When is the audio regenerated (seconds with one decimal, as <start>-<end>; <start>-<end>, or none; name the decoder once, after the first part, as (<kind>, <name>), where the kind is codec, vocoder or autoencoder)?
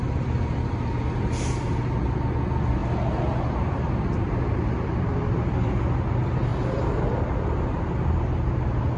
none